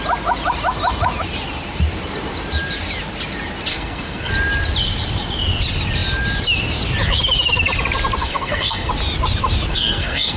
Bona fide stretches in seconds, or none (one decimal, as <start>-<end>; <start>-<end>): 0.0-3.7; 4.3-8.2; 8.9-9.7